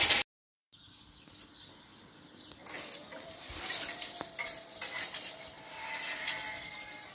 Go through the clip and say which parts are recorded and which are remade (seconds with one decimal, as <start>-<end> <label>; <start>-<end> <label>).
0.0-2.6 recorded; 2.6-5.7 remade; 5.7-7.1 recorded